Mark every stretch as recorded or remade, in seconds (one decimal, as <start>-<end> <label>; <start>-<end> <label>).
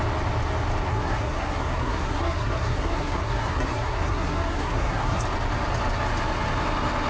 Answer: 0.0-0.9 recorded; 0.9-5.2 remade; 5.2-7.1 recorded